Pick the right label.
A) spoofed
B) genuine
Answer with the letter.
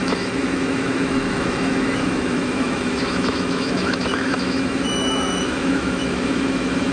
A